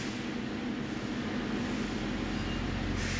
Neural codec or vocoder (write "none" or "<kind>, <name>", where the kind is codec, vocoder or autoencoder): none